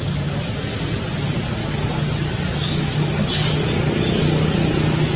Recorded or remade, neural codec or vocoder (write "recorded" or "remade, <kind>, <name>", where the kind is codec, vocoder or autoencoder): recorded